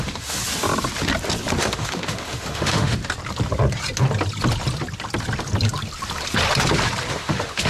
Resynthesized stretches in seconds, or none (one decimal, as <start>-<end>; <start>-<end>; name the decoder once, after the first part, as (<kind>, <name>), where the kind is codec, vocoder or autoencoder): 0.0-0.4 (autoencoder, DAC-VAE); 1.6-3.0; 7.1-7.7